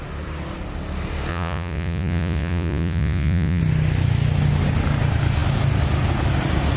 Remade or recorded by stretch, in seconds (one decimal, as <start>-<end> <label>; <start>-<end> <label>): 0.0-1.3 recorded; 1.3-3.6 remade; 3.6-6.8 recorded